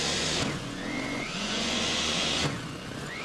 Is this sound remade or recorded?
remade